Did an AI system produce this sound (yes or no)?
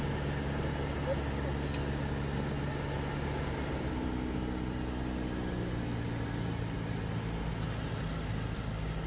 no